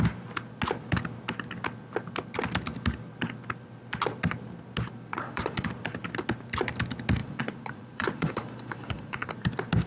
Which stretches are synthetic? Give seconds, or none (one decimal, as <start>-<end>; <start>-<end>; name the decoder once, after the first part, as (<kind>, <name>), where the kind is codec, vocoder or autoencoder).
5.1-5.7 (vocoder, Vocos); 7.2-9.3